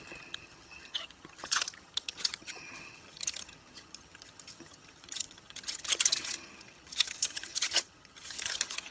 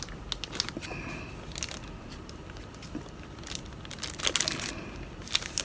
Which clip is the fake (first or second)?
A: first